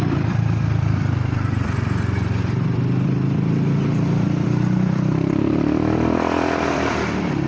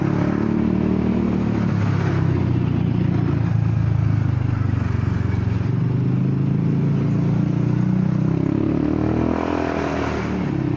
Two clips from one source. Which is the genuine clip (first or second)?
second